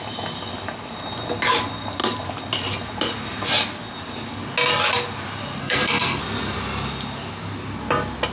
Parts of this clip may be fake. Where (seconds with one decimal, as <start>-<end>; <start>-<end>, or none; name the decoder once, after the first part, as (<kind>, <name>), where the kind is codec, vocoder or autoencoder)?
5.6-6.2 (codec, SNAC)